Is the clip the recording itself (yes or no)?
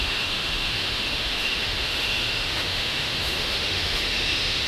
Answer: no